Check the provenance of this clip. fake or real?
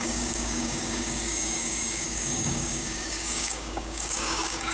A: fake